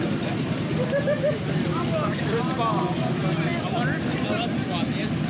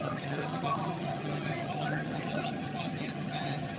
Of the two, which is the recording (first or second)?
first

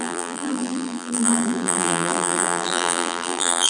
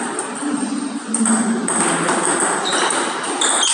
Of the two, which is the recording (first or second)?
second